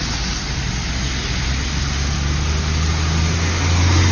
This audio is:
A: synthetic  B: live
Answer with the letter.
B